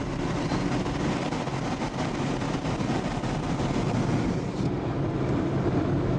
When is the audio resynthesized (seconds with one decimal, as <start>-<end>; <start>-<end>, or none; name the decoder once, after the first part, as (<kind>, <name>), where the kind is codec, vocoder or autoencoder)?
0.0-0.5 (vocoder, BigVGAN v2); 4.2-6.2